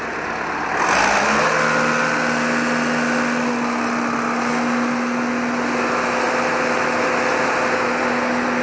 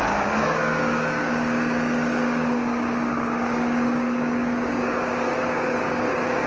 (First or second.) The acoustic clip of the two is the first